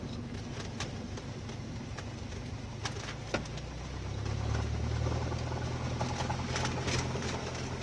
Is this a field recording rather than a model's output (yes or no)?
yes